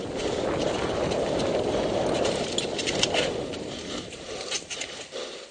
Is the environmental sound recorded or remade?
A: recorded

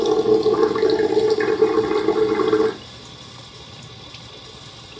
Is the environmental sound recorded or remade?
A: recorded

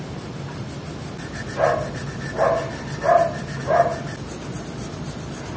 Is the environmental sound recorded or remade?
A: recorded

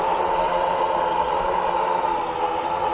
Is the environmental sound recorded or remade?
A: recorded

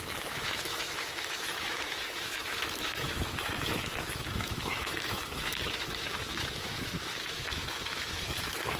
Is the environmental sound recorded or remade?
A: remade